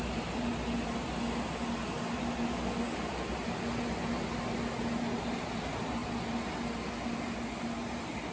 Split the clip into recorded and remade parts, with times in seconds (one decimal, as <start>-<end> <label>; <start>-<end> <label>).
0.0-0.5 remade; 0.5-5.3 recorded; 5.3-6.0 remade; 6.0-7.2 recorded; 7.2-8.3 remade